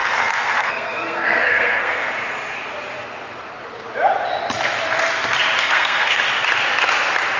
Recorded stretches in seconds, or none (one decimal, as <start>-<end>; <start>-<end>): 2.1-5.6; 6.2-7.4